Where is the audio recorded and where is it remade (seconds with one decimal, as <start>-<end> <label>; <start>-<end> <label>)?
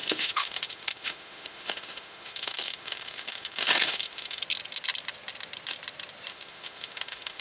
0.0-4.4 remade; 4.4-6.3 recorded; 6.3-7.4 remade